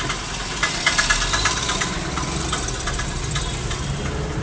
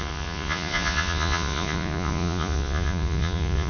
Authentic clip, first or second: first